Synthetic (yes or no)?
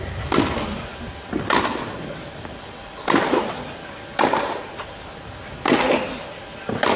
no